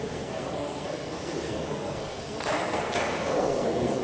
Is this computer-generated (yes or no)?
yes